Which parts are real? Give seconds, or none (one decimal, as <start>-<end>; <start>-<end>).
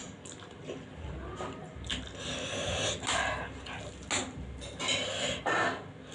0.0-6.1